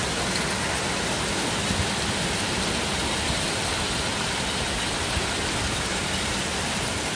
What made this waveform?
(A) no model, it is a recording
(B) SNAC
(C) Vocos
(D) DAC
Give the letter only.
A